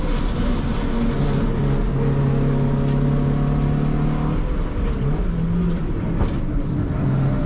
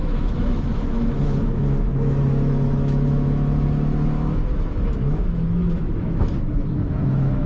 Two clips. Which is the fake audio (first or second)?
second